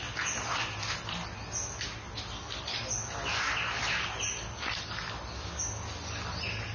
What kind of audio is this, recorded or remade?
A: recorded